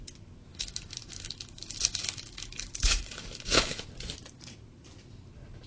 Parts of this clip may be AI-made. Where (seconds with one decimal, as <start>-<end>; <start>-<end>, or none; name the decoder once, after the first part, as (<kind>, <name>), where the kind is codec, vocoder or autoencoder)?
0.5-3.9 (autoencoder, DAC-VAE)